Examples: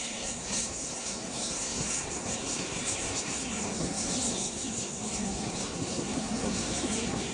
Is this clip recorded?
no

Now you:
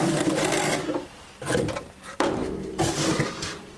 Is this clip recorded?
yes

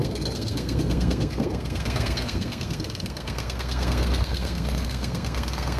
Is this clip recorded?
no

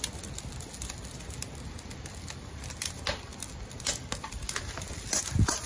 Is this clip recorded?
yes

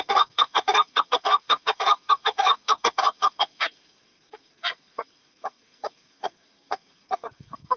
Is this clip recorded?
no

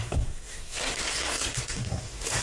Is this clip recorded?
no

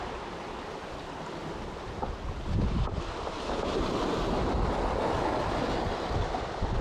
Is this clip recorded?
yes